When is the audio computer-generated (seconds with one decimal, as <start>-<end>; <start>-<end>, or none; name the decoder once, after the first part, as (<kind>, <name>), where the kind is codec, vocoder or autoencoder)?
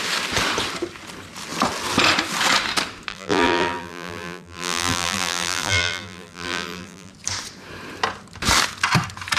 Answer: 3.1-7.1 (vocoder, BigVGAN v2)